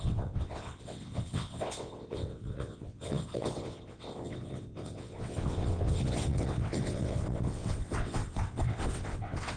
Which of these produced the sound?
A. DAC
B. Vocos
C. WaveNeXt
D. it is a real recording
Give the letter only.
C